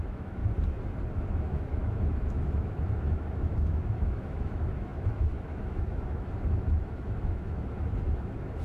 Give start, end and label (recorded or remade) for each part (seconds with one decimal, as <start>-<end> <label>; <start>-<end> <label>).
0.0-0.4 remade; 0.4-1.3 recorded; 1.3-8.6 remade